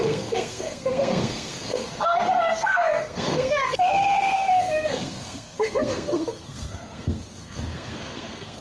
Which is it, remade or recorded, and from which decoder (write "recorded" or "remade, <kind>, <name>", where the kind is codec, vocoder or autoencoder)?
remade, codec, SNAC